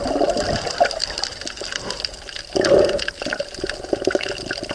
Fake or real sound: real